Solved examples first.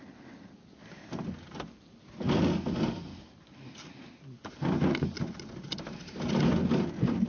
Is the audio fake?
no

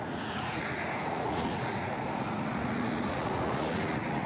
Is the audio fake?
yes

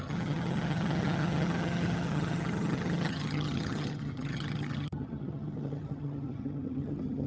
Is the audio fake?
yes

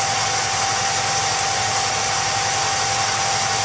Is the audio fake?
no